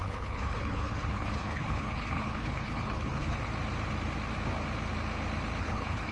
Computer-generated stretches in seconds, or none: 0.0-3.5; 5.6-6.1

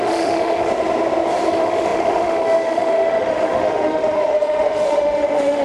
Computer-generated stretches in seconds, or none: 0.0-0.7; 1.5-5.6

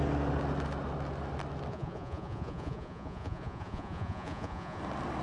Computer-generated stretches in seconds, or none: 1.7-4.8

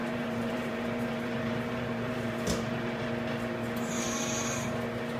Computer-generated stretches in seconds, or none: 0.0-3.1

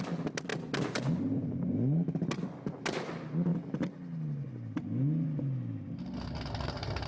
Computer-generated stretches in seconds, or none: none

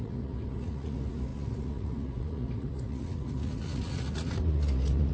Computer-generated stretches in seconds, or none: 0.0-5.1

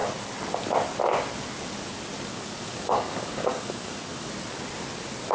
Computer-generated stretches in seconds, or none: 2.3-4.3

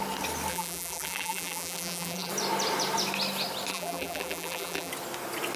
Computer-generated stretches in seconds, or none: 0.5-2.3; 3.7-4.9